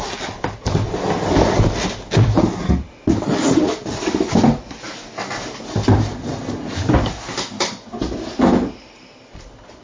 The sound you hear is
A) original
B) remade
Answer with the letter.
A